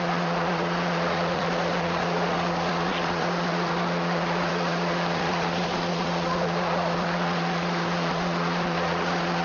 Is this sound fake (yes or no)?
yes